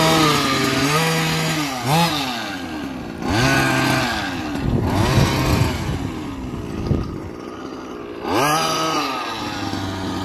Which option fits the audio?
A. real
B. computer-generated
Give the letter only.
A